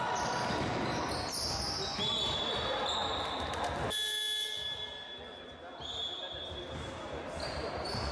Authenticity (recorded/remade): recorded